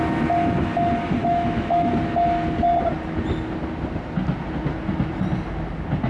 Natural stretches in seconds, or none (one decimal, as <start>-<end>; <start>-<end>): 0.0-1.2; 1.9-6.1